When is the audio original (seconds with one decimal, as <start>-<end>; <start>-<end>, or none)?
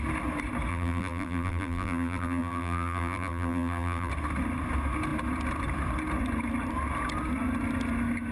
0.0-0.7; 4.1-8.3